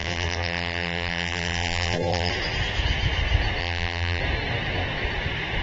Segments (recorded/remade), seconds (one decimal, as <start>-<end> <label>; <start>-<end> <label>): 0.0-2.3 remade; 2.3-3.6 recorded; 3.6-4.2 remade; 4.2-5.6 recorded